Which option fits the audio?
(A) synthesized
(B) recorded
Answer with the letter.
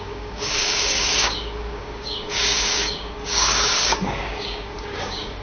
A